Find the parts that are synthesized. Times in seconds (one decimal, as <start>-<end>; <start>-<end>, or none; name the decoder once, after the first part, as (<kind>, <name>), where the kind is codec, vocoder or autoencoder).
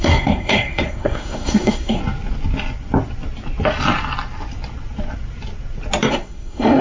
0.0-2.0 (codec, SNAC); 6.1-6.8